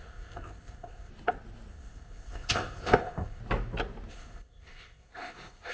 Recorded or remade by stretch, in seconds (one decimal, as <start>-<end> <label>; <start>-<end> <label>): 0.0-1.1 remade; 1.1-1.7 recorded; 1.7-3.4 remade; 3.4-4.1 recorded; 4.1-5.7 remade